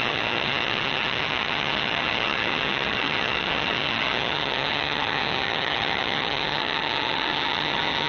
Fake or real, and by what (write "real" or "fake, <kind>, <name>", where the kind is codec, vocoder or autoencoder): fake, vocoder, HiFi-GAN